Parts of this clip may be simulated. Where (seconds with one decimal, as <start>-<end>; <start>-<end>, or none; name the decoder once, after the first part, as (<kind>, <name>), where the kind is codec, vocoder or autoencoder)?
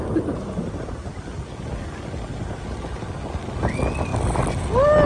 none